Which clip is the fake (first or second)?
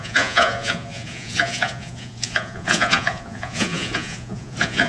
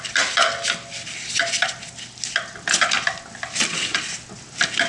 first